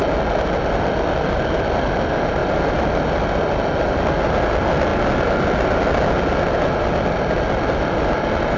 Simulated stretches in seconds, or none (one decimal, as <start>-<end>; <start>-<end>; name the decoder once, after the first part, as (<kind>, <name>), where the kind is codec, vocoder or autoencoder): none